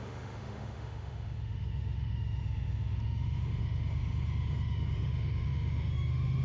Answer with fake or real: fake